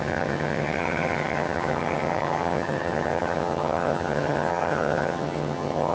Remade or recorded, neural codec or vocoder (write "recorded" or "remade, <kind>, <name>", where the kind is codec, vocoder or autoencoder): remade, vocoder, HiFi-GAN